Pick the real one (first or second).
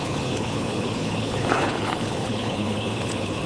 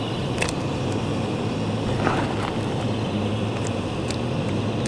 second